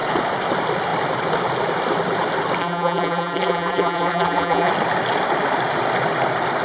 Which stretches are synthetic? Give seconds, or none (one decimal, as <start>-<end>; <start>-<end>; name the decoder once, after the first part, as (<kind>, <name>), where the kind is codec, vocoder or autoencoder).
2.6-4.7 (vocoder, BigVGAN v2)